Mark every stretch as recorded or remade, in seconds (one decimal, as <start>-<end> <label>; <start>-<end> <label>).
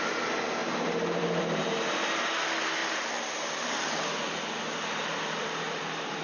0.0-0.6 recorded; 0.6-1.7 remade; 1.7-2.8 recorded; 2.8-4.0 remade; 4.0-6.2 recorded